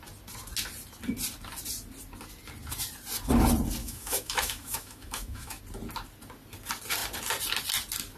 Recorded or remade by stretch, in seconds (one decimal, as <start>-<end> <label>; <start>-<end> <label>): 0.0-3.8 recorded; 3.8-5.6 remade; 5.6-8.2 recorded